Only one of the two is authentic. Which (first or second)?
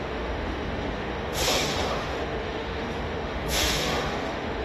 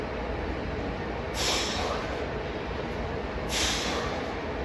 second